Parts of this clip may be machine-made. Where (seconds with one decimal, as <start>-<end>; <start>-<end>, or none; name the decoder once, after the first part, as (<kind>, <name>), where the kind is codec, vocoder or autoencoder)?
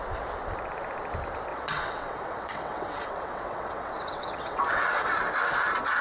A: 1.5-5.1 (vocoder, WaveNeXt)